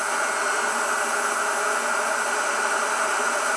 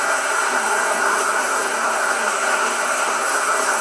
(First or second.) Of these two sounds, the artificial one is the second